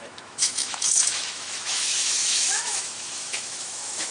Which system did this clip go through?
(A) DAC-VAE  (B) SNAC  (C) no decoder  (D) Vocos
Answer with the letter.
A